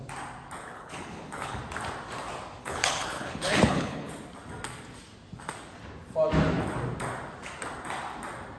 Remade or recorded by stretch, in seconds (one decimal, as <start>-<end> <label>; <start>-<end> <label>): 0.0-0.6 recorded; 0.6-1.6 remade; 1.6-2.6 recorded; 2.6-4.1 remade; 4.1-8.6 recorded